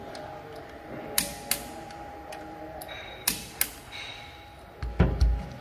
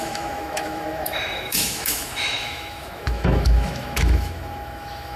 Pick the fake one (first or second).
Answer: second